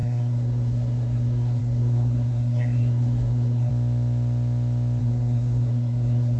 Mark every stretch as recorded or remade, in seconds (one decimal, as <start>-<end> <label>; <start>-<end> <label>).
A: 0.0-3.7 remade; 3.7-5.0 recorded; 5.0-6.4 remade